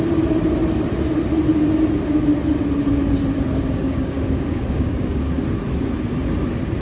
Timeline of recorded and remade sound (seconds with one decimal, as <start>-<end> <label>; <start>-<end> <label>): 0.0-3.5 recorded; 3.5-5.4 remade; 5.4-6.8 recorded